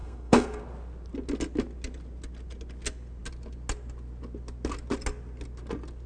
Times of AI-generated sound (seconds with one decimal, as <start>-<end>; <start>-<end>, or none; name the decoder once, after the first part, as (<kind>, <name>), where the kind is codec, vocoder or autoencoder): 0.0-0.6 (codec, SNAC)